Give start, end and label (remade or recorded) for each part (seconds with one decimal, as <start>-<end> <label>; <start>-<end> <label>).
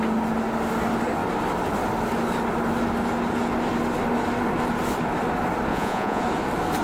0.0-5.7 recorded; 5.7-6.2 remade; 6.2-6.8 recorded